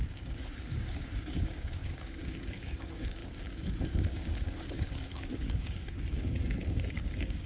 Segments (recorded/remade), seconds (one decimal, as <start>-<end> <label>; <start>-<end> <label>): 0.0-7.5 remade